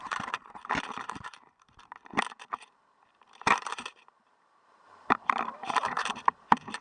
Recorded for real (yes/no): no